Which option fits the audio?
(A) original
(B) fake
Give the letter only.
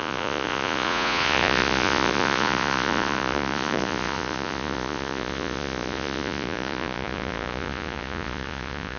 B